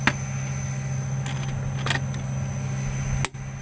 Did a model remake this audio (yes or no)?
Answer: no